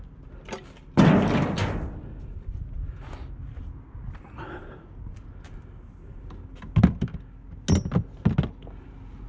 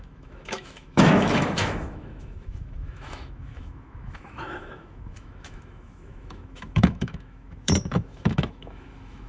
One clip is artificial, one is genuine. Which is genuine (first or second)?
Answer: first